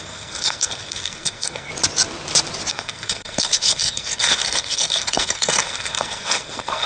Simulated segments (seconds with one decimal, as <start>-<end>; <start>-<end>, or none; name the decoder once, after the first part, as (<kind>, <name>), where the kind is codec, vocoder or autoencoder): 0.0-1.7 (codec, SNAC); 2.7-6.9